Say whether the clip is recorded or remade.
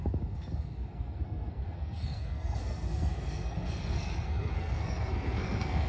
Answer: remade